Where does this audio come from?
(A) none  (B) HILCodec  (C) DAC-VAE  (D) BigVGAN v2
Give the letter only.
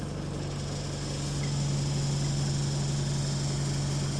A